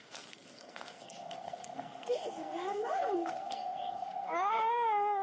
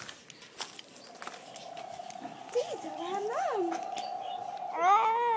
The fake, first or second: first